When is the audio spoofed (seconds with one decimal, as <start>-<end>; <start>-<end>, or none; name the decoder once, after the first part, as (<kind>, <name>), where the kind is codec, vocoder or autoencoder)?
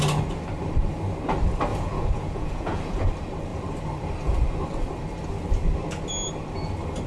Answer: 1.7-3.1 (vocoder, Vocos)